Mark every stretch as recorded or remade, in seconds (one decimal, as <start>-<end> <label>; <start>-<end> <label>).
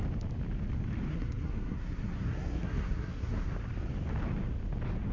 0.0-1.1 recorded; 1.1-3.5 remade; 3.5-5.1 recorded